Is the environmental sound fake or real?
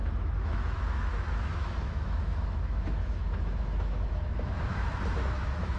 fake